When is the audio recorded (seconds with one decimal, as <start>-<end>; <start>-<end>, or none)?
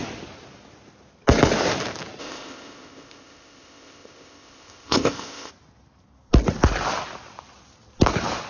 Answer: 0.0-2.2; 5.5-8.5